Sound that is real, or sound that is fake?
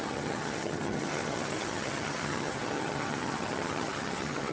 fake